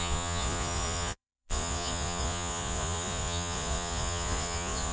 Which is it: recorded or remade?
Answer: remade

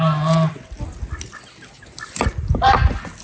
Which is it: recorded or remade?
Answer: recorded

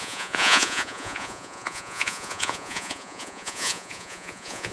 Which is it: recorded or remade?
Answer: remade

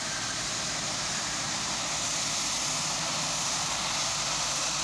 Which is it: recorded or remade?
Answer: recorded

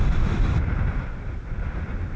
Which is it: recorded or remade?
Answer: recorded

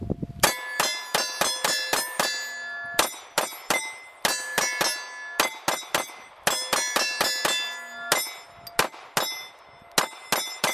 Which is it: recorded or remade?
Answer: recorded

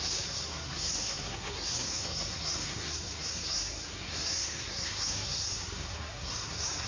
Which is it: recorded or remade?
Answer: remade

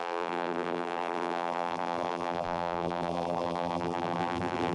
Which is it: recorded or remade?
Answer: remade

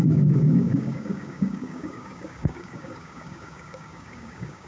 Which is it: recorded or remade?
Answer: remade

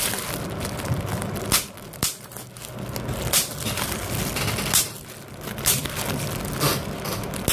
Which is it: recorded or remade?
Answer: recorded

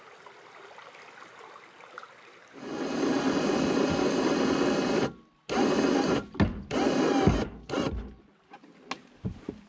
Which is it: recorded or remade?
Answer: recorded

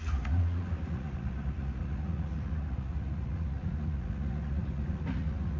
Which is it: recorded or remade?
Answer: remade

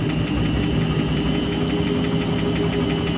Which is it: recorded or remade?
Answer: recorded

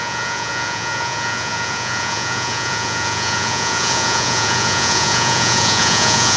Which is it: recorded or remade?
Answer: remade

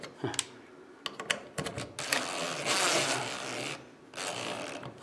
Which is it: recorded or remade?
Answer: recorded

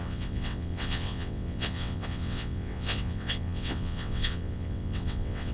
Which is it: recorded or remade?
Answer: remade